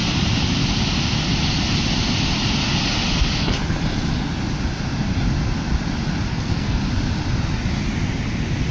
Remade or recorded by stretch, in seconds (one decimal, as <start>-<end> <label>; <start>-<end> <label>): 0.0-6.3 recorded; 6.3-6.8 remade; 6.8-8.7 recorded